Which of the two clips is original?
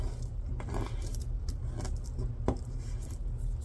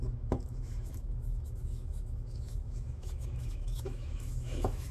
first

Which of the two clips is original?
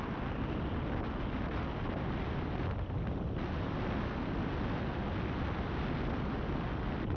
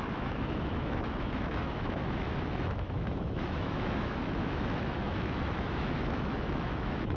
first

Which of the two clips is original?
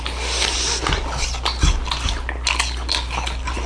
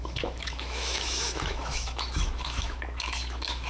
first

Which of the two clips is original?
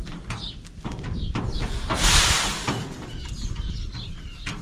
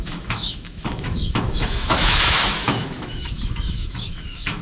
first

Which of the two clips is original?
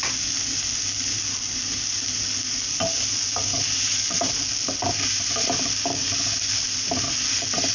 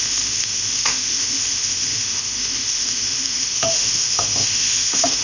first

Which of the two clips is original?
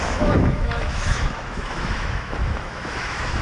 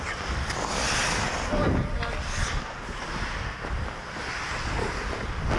second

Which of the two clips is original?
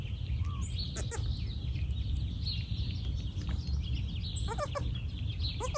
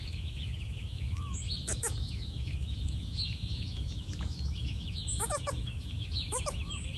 first